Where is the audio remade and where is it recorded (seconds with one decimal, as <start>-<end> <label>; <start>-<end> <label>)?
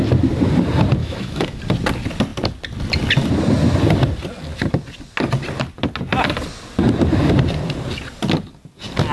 0.0-1.0 recorded; 1.0-1.6 remade; 1.6-9.1 recorded